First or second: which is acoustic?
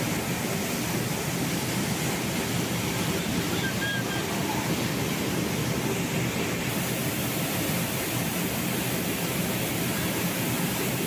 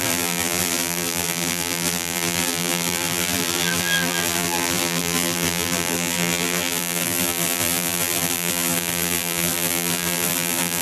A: first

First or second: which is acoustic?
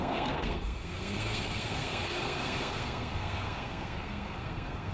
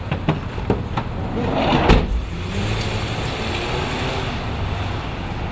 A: second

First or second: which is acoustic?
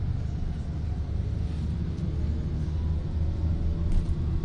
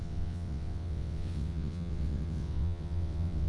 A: first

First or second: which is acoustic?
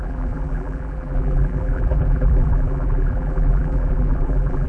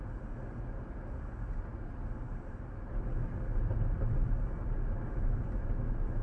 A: second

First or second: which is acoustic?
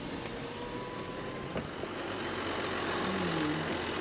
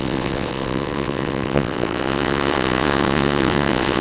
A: first